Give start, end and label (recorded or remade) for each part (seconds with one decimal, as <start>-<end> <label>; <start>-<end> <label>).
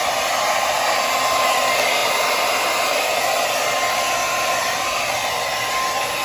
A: 0.0-6.2 recorded